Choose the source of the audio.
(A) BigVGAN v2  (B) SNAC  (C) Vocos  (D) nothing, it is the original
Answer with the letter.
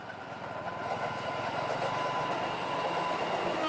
D